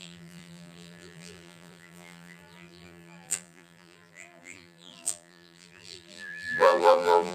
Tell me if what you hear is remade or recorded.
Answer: remade